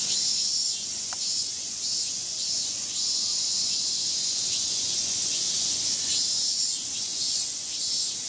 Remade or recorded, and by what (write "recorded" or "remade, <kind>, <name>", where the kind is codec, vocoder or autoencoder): remade, vocoder, Vocos